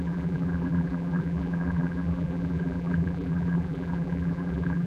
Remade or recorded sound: remade